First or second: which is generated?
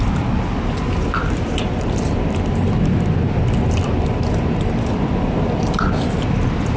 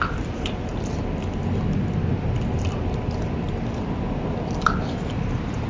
first